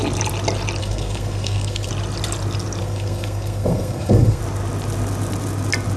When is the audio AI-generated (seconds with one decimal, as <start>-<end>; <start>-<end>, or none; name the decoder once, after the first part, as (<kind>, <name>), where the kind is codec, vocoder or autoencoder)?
0.8-1.9 (codec, SNAC); 2.8-4.4